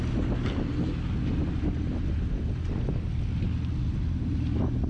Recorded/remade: recorded